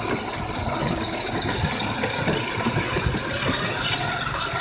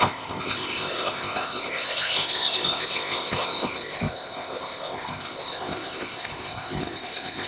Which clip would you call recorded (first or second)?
first